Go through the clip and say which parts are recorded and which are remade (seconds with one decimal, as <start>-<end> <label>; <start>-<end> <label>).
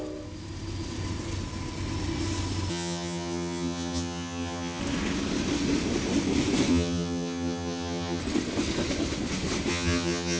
0.0-2.7 recorded; 2.7-4.8 remade; 4.8-6.7 recorded; 6.7-8.2 remade; 8.2-9.7 recorded; 9.7-10.4 remade